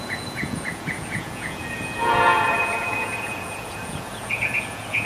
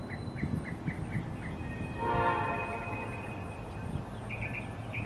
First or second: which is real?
second